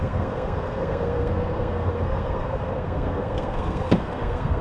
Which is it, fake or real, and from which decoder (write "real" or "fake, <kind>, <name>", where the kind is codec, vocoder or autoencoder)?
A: fake, codec, SNAC